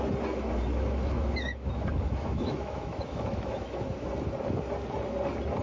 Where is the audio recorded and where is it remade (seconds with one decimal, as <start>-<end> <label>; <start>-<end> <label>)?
0.0-0.7 recorded; 0.7-4.1 remade; 4.1-5.6 recorded